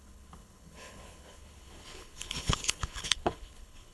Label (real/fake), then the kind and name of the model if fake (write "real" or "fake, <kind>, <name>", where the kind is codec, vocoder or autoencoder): fake, codec, HILCodec